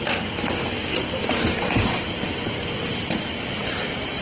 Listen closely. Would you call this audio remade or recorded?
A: remade